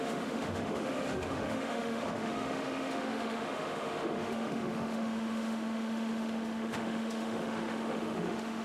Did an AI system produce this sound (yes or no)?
yes